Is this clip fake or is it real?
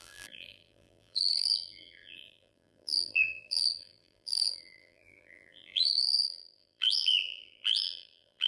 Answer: fake